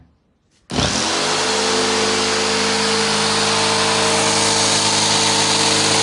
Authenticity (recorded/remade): recorded